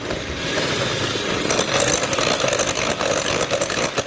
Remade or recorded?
recorded